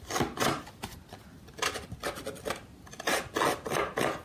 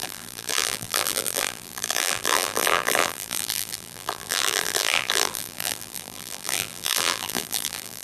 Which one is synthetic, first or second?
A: second